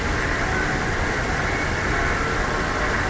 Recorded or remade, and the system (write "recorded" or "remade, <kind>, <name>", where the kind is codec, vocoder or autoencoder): recorded